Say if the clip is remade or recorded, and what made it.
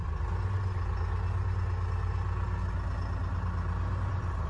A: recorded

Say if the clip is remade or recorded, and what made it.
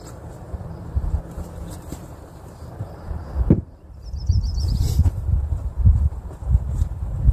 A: remade, vocoder, BigVGAN v2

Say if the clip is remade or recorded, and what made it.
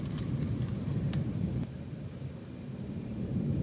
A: remade, vocoder, BigVGAN v2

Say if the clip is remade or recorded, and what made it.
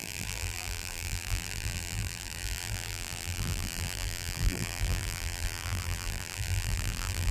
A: remade, vocoder, BigVGAN v2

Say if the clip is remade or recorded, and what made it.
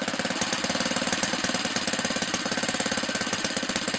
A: recorded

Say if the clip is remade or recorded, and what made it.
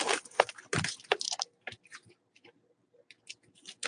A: remade, vocoder, BigVGAN v2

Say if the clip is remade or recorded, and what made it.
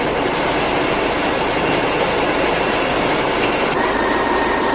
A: recorded